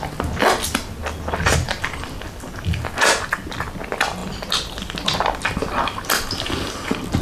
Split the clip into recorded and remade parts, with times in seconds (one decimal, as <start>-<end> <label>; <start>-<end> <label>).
0.0-7.2 recorded

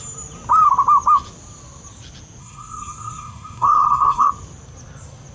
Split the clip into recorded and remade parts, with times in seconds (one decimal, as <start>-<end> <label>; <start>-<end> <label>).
0.0-2.4 recorded; 2.4-4.3 remade; 4.3-5.3 recorded